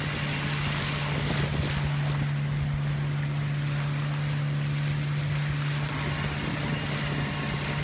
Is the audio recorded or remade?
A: recorded